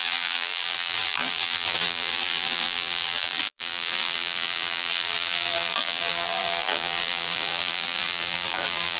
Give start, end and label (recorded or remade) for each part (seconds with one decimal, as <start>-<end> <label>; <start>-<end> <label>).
0.0-9.0 remade